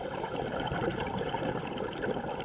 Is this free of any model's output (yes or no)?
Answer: no